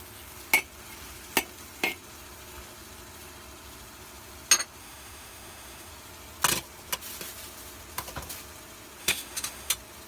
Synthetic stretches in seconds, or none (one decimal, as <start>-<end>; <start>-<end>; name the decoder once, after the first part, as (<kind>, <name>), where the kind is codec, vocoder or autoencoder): 4.8-5.9 (autoencoder, DAC-VAE); 9.0-9.7